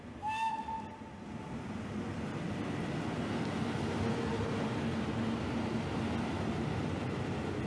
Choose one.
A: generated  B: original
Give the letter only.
B